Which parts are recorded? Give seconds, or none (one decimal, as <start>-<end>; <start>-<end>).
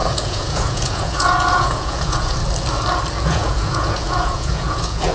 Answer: 2.4-3.2